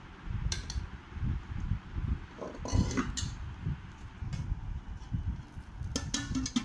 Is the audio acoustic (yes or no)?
yes